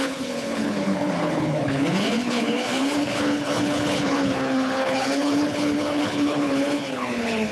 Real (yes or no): no